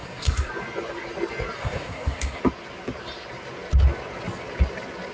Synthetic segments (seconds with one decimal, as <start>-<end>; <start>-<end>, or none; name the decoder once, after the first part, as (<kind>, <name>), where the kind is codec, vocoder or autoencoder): 0.0-0.5 (codec, SNAC); 1.6-2.4